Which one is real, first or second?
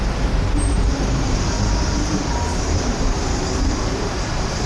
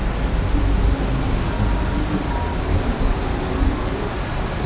second